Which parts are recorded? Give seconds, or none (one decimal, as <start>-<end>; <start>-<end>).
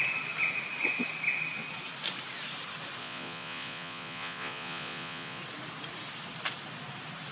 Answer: 0.0-3.0; 5.4-7.3